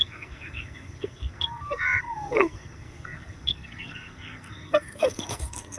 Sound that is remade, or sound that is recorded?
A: remade